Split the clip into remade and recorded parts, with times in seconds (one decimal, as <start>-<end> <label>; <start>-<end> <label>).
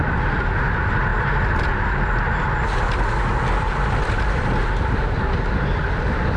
0.0-6.4 recorded